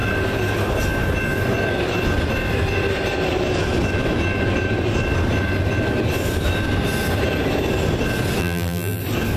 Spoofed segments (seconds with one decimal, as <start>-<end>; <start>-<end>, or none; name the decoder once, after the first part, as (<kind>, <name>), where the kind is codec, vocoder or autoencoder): 8.4-9.0 (vocoder, BigVGAN v2)